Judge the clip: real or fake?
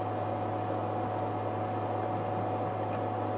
real